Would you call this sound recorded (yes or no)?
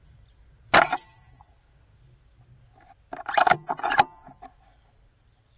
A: yes